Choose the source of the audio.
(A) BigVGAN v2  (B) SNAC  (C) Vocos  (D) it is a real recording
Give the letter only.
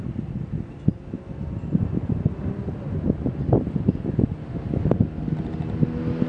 D